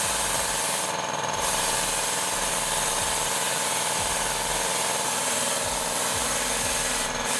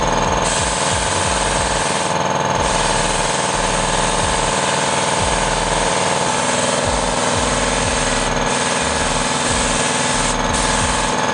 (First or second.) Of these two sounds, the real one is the second